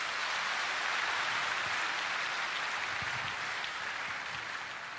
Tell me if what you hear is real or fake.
real